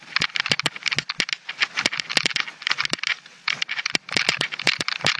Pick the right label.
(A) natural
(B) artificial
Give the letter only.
A